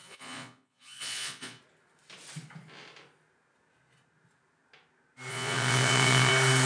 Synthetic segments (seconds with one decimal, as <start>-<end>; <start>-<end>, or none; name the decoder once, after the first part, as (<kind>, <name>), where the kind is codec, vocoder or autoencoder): 0.0-1.6 (vocoder, Vocos); 5.3-6.3